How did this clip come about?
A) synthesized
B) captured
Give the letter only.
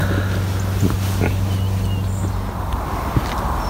B